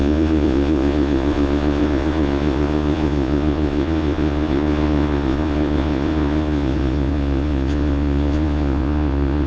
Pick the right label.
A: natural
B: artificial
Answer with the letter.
B